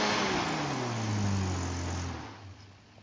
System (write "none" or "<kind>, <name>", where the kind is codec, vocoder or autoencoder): none